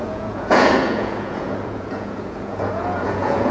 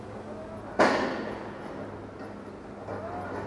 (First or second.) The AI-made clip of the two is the first